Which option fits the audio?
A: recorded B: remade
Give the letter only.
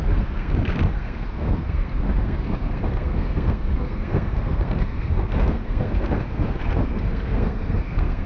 B